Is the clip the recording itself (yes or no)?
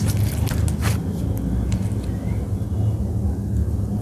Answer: yes